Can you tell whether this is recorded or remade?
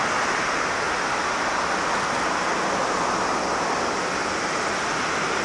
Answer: recorded